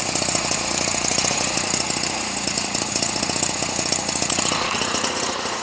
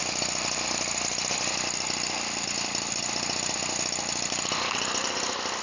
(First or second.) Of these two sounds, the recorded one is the second